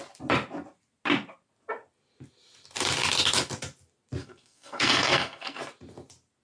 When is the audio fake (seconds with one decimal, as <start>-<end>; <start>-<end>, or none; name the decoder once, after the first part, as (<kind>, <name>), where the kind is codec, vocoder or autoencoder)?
4.2-5.6 (codec, SNAC)